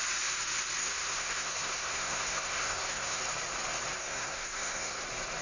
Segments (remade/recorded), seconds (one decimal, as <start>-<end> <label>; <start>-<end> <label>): 0.0-0.8 recorded; 0.8-3.2 remade; 3.2-4.0 recorded; 4.0-5.0 remade; 5.0-5.4 recorded